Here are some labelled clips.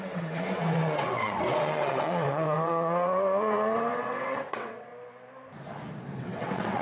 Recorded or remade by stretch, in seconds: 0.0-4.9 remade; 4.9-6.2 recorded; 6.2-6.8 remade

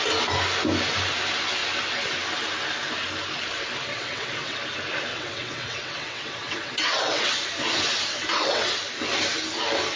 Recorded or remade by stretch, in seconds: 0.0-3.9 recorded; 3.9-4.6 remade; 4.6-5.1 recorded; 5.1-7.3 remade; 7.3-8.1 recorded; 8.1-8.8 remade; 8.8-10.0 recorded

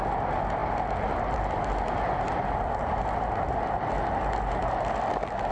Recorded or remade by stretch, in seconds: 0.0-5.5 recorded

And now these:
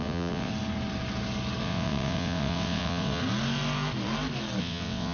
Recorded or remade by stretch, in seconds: 0.0-0.5 remade; 0.5-1.6 recorded; 1.6-3.2 remade; 3.2-4.6 recorded; 4.6-5.1 remade